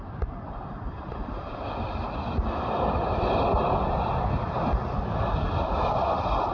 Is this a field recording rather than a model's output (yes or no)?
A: yes